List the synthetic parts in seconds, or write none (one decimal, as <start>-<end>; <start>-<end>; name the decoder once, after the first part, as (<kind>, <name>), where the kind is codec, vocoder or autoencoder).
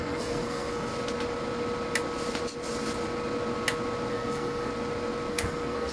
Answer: 0.0-0.9 (codec, SNAC); 4.1-4.7; 5.3-5.9